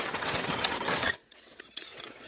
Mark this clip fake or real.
fake